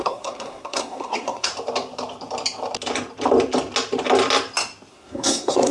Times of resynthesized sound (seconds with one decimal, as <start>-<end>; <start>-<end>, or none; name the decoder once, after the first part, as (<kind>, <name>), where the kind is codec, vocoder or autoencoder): 0.0-1.5 (codec, SNAC); 4.9-5.7